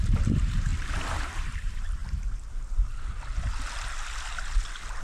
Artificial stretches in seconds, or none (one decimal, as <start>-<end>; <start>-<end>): 0.0-0.7; 1.2-2.0